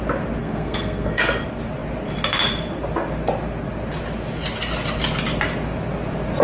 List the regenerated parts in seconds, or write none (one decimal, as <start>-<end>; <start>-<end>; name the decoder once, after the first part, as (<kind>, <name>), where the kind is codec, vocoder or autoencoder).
0.4-1.4 (codec, SNAC)